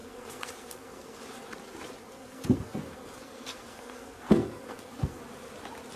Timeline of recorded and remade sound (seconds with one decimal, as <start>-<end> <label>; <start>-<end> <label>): 0.0-1.2 remade; 1.2-2.0 recorded; 2.0-5.2 remade; 5.2-6.0 recorded